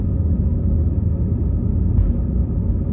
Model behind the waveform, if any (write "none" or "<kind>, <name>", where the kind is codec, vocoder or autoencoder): none